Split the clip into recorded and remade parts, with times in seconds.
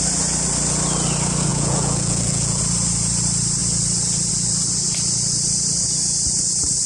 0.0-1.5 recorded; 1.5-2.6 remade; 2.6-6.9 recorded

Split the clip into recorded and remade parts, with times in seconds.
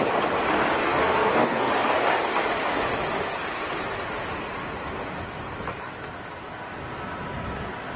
0.0-0.8 recorded; 0.8-1.7 remade; 1.7-8.0 recorded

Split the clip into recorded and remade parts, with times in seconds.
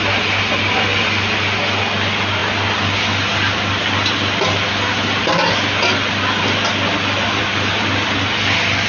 0.0-8.9 recorded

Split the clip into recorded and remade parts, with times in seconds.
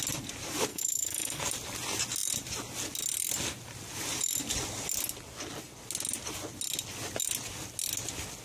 0.0-0.7 recorded; 0.7-1.4 remade; 1.4-8.4 recorded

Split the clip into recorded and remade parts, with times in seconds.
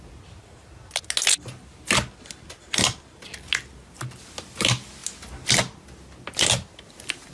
0.0-7.3 recorded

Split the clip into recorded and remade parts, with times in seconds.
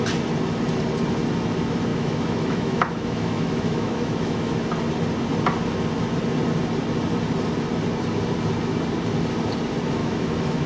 0.0-1.9 recorded; 1.9-4.6 remade; 4.6-10.0 recorded; 10.0-10.7 remade